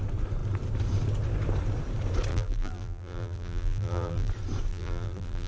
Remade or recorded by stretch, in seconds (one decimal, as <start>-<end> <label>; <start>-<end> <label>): 0.0-2.3 recorded; 2.3-4.3 remade; 4.3-4.7 recorded; 4.7-5.5 remade